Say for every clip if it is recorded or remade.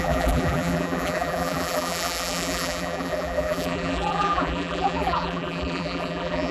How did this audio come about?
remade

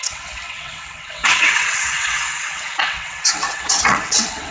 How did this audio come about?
remade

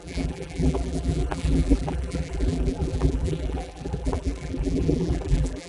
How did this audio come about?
remade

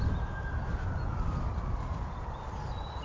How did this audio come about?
recorded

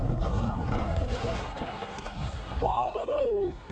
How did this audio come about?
remade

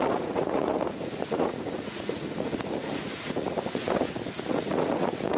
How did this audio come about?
remade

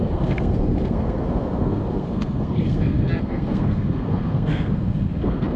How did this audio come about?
remade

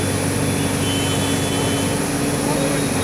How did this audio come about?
recorded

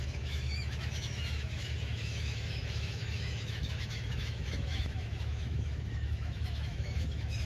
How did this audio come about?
remade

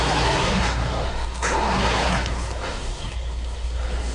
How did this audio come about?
remade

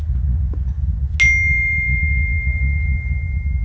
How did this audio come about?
recorded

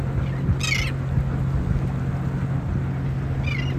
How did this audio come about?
recorded